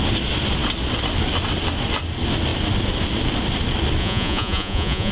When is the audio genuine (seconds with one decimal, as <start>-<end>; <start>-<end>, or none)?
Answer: 0.0-4.0